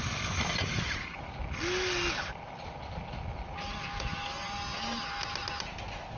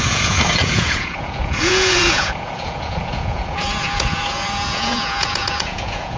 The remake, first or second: second